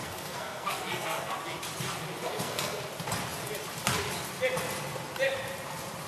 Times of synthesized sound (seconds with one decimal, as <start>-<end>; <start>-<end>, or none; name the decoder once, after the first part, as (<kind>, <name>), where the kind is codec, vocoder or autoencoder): 0.0-1.4 (codec, SNAC); 2.2-2.8